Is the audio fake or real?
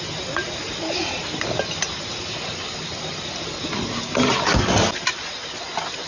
real